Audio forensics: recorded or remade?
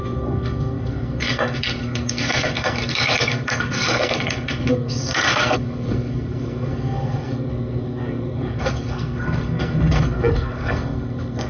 remade